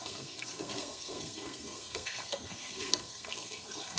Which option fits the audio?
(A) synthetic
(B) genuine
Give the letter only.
A